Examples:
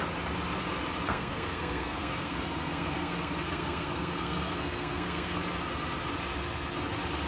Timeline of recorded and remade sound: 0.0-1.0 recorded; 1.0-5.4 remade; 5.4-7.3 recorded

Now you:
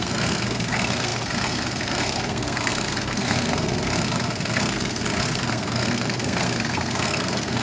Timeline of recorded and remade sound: 0.0-7.6 remade

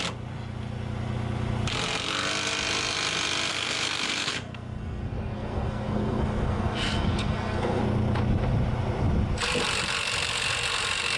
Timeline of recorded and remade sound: 0.0-3.5 recorded; 3.5-7.8 remade; 7.8-11.2 recorded